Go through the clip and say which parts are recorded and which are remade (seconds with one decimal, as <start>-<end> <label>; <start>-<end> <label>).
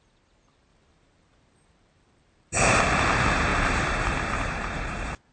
0.0-0.7 recorded; 0.7-2.8 remade; 2.8-3.5 recorded; 3.5-4.6 remade; 4.6-5.3 recorded